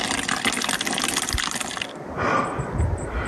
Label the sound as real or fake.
real